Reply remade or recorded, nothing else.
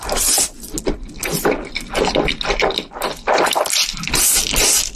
recorded